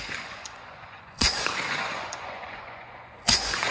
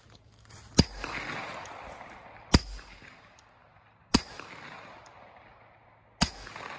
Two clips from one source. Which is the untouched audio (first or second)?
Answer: second